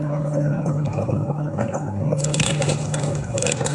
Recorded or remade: remade